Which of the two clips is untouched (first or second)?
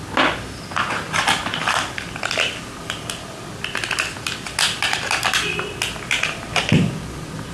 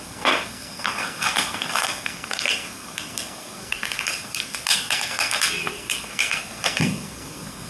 first